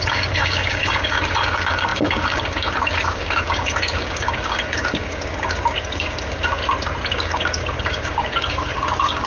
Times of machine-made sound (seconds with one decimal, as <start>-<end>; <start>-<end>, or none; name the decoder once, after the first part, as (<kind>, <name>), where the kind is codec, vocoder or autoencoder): 0.0-6.6 (codec, DAC); 7.1-9.3